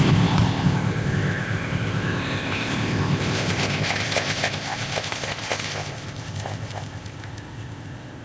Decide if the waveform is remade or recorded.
remade